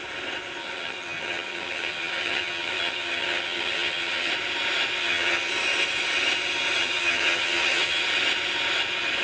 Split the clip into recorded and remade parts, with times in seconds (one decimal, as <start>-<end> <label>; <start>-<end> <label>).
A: 0.0-0.6 recorded; 0.6-4.3 remade; 4.3-5.0 recorded; 5.0-5.5 remade; 5.5-6.8 recorded; 6.8-8.0 remade; 8.0-9.2 recorded